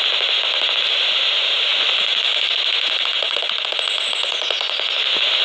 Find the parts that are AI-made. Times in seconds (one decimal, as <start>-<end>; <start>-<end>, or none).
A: 1.7-4.9